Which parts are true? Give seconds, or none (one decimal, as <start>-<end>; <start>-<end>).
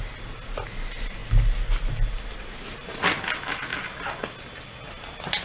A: 0.0-5.4